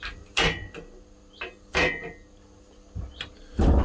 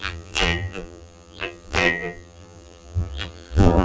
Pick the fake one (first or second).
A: second